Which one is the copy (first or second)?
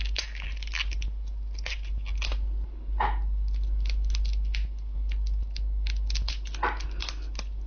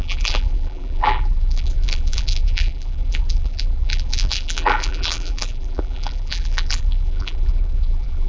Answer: second